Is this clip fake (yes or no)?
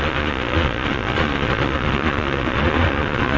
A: yes